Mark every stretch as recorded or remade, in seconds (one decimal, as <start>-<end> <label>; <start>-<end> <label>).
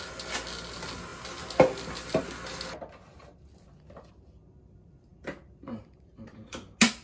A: 0.0-7.0 recorded